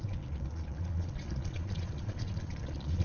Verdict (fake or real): fake